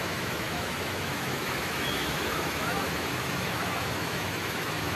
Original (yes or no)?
no